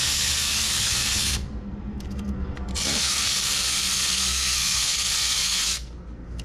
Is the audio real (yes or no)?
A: no